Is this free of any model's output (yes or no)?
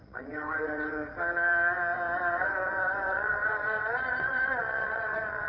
no